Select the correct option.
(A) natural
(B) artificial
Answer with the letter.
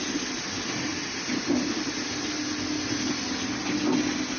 A